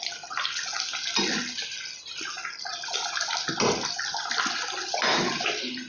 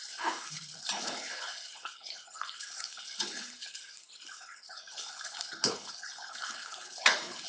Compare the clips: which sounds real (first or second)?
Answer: first